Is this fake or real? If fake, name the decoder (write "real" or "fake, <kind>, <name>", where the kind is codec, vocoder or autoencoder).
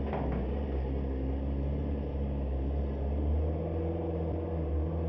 fake, vocoder, BigVGAN v2